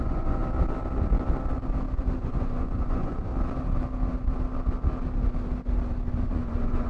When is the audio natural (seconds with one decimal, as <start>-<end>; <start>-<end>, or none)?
0.4-2.2; 3.3-6.2